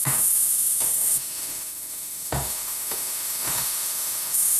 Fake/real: fake